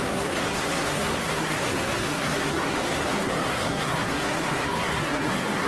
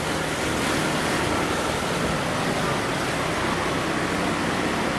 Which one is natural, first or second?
second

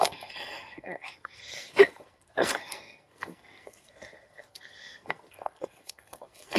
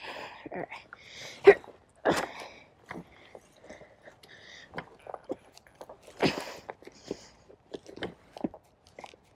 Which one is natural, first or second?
second